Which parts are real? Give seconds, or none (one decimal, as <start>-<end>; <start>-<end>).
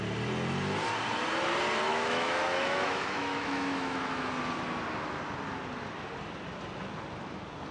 0.0-1.9; 4.3-7.7